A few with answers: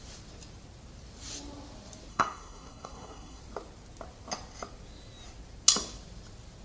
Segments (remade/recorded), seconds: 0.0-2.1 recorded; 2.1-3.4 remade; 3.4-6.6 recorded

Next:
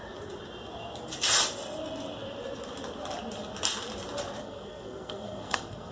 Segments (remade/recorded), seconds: 0.0-4.4 recorded; 4.4-5.9 remade

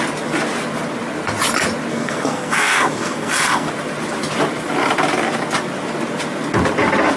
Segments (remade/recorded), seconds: 0.0-1.9 recorded; 1.9-3.7 remade; 3.7-7.2 recorded

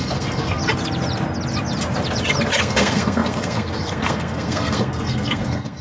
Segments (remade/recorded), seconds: 0.0-0.6 remade; 0.6-2.6 recorded; 2.6-5.8 remade